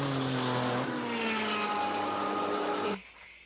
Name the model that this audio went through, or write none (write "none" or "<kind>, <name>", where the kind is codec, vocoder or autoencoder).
none